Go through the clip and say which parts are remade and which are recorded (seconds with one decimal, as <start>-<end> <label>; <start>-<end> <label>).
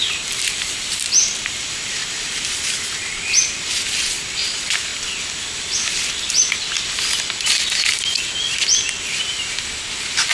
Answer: 0.0-10.3 recorded